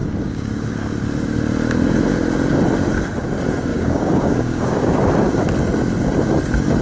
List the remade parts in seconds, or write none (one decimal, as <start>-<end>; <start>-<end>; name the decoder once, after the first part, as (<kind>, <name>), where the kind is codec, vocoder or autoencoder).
0.0-0.5 (codec, DAC); 3.7-5.0